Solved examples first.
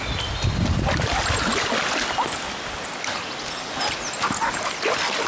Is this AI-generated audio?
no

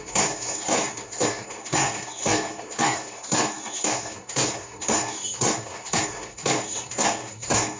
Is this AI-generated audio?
yes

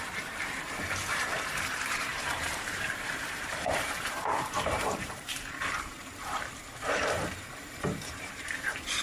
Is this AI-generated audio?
yes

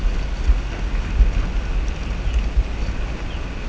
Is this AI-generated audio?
no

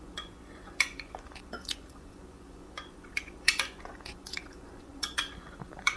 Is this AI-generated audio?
yes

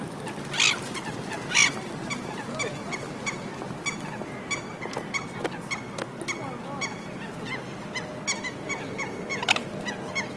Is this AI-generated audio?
no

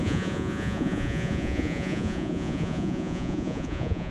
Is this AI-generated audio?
yes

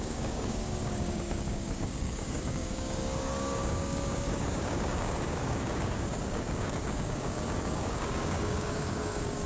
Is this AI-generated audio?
yes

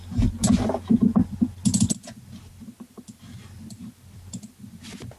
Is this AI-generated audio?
no